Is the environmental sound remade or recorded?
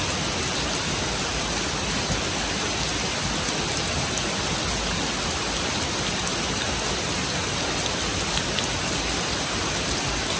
recorded